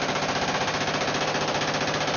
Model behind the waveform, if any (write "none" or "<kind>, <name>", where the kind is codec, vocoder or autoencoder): none